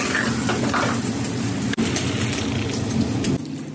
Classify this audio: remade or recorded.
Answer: recorded